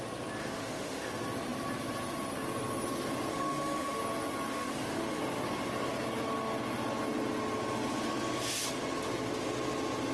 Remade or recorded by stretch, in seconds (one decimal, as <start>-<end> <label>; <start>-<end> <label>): 0.0-0.4 recorded; 0.4-1.1 remade; 1.1-3.3 recorded; 3.3-4.0 remade; 4.0-4.5 recorded; 4.5-5.2 remade; 5.2-10.1 recorded